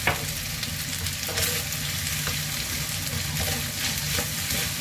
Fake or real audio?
real